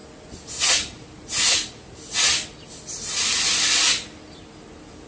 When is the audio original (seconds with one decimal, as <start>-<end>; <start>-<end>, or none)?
0.0-5.1